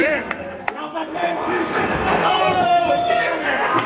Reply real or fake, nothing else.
fake